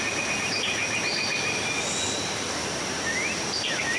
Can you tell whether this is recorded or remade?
recorded